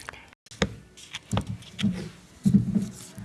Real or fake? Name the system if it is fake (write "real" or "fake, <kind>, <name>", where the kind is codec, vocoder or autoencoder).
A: real